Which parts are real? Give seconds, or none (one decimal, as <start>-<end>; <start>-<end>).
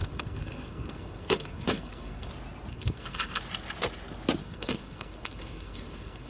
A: 2.3-2.7; 3.4-4.4